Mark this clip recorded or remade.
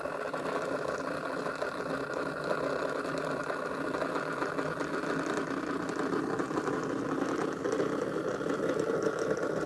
recorded